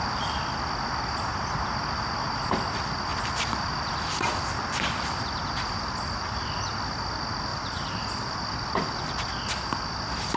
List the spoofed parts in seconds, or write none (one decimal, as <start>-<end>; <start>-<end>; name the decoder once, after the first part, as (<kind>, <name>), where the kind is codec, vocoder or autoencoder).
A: 3.1-6.4 (vocoder, BigVGAN v2); 7.5-9.3